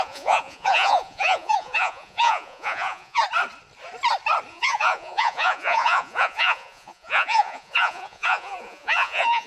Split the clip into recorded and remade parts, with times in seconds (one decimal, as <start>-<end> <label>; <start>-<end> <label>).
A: 0.0-3.2 remade; 3.2-4.5 recorded; 4.5-9.5 remade